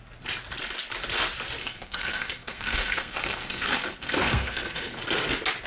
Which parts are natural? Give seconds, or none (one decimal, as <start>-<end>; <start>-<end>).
0.0-1.6; 5.0-5.7